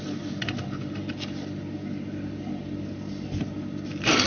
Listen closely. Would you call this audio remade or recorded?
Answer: recorded